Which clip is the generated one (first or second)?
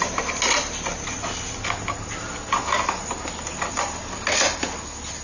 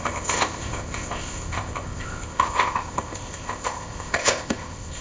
second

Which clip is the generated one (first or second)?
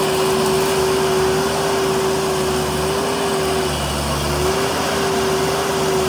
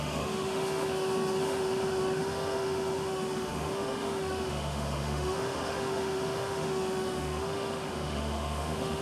second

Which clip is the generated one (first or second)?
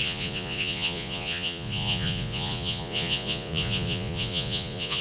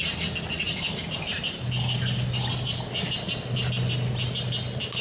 first